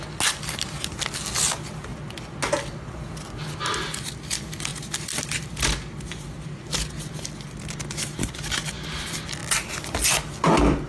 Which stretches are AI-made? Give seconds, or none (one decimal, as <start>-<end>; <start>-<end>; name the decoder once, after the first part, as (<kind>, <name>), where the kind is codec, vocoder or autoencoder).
none